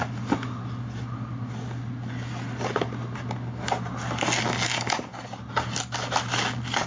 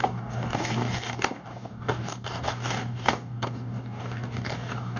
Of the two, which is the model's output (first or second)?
second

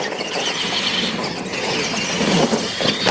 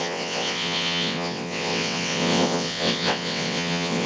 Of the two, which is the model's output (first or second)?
second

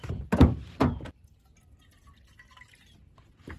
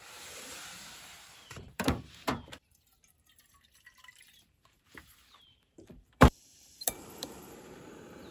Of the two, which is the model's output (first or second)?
second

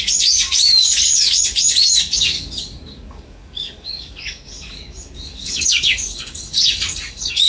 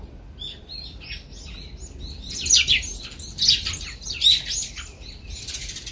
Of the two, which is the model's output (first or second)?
first